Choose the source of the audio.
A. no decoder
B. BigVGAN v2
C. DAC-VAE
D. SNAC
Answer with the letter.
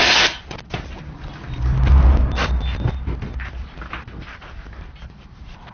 A